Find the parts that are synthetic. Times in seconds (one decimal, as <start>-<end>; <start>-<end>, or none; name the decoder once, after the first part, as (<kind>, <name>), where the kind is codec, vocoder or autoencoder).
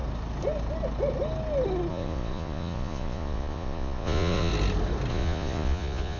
1.9-4.5 (vocoder, Vocos); 5.1-6.2